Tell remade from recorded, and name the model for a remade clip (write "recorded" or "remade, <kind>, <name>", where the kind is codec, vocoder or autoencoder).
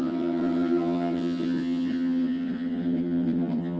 remade, vocoder, HiFi-GAN